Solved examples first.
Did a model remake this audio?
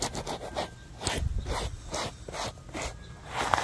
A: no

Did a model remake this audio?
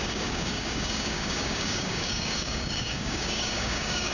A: yes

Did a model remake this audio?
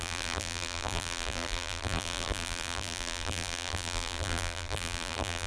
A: yes